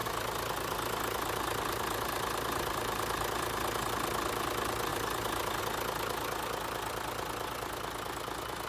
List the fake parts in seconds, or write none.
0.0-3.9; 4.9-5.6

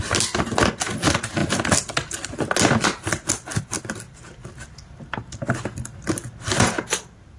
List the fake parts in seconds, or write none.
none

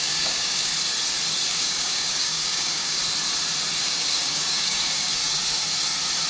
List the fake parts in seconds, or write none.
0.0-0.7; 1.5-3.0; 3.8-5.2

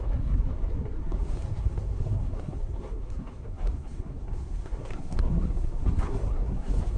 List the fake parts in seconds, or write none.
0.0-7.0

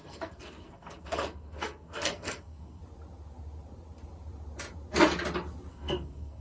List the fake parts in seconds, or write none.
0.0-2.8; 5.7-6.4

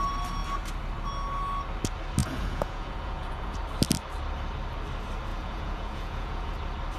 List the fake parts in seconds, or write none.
2.2-3.6; 5.3-6.5

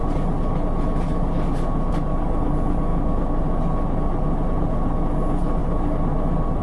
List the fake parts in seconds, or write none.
2.9-3.4

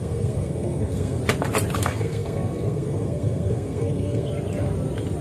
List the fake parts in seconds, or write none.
0.0-1.2; 1.8-4.3